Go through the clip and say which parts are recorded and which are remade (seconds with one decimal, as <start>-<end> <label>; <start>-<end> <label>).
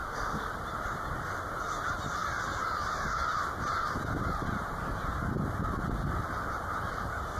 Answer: 0.0-0.5 remade; 0.5-7.4 recorded